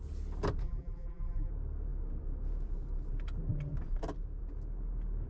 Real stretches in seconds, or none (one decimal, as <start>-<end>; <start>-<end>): 0.0-0.6; 1.5-5.3